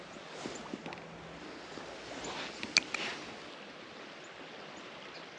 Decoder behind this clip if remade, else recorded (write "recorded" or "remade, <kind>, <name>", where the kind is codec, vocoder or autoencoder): recorded